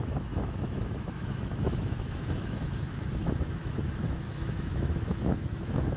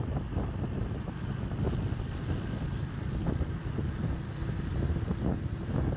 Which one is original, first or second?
second